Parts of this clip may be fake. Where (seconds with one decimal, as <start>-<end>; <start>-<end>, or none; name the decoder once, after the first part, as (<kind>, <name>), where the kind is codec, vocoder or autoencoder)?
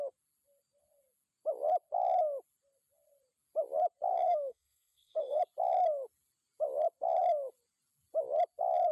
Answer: 4.1-5.4 (codec, SNAC)